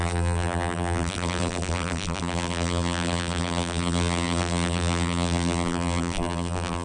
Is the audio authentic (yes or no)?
no